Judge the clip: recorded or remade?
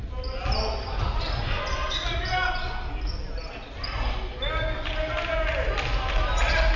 recorded